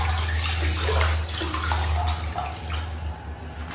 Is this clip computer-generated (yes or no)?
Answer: no